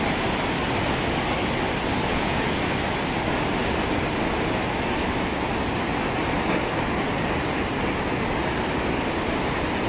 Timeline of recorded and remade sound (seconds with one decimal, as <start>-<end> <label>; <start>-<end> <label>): 0.0-2.1 recorded; 2.1-2.6 remade; 2.6-9.9 recorded

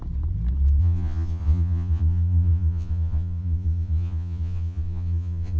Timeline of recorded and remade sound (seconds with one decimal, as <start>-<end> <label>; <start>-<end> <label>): 0.0-0.8 recorded; 0.8-5.6 remade

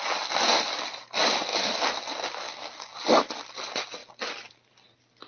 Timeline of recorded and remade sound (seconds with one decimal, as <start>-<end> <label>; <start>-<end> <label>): 0.0-5.3 recorded

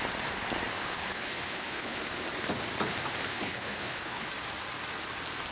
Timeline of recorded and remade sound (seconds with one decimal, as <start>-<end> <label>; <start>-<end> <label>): 0.0-0.7 recorded; 0.7-2.0 remade; 2.0-3.3 recorded; 3.3-4.3 remade; 4.3-5.5 recorded

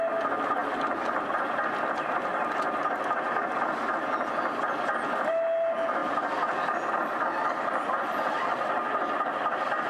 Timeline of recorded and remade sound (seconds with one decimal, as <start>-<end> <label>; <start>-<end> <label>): 0.0-9.9 recorded

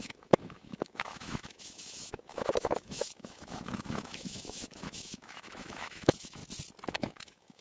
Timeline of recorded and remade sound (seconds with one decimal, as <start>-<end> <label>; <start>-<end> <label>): 0.0-6.4 remade; 6.4-6.9 recorded; 6.9-7.6 remade